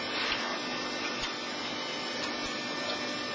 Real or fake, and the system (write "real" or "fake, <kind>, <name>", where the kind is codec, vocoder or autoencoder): real